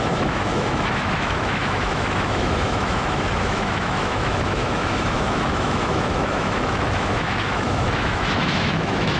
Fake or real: fake